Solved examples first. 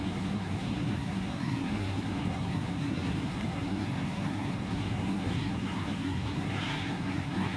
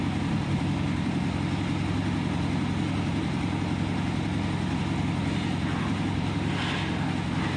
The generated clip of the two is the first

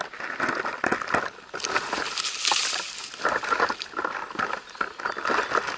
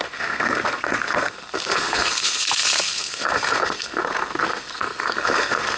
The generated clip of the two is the second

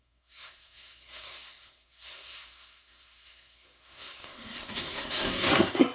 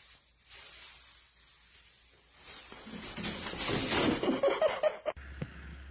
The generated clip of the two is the first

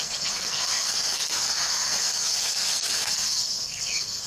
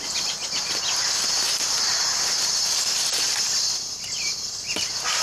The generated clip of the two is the first